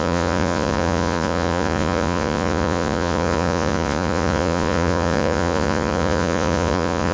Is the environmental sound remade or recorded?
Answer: remade